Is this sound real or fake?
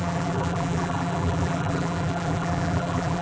fake